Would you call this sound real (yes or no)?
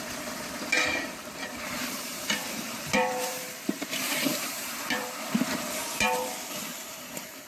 no